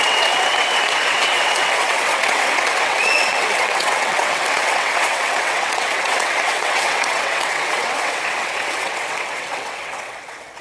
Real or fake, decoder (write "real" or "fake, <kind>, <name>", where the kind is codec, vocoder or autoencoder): fake, vocoder, WaveNeXt